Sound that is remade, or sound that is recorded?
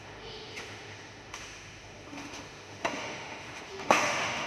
remade